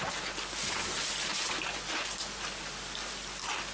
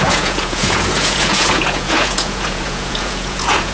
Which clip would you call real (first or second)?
first